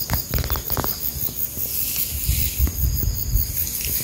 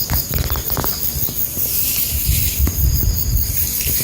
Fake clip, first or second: second